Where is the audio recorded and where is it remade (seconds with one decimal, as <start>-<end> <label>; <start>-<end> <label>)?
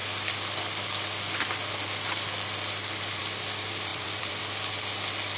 0.0-3.9 recorded; 3.9-4.4 remade; 4.4-5.4 recorded